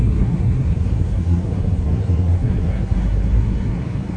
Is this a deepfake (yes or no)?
yes